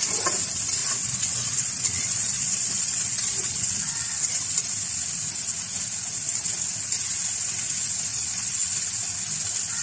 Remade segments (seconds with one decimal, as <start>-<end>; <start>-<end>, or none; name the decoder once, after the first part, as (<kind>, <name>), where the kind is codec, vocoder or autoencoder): 0.8-4.5 (vocoder, Vocos); 8.1-8.9